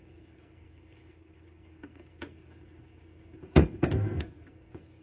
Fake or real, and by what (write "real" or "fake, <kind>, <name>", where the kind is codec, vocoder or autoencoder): fake, codec, SNAC